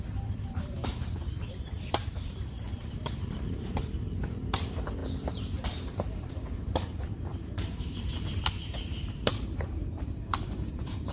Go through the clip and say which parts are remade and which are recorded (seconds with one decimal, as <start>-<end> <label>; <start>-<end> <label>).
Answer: 0.0-1.0 remade; 1.0-1.6 recorded; 1.6-8.1 remade; 8.1-9.1 recorded; 9.1-11.1 remade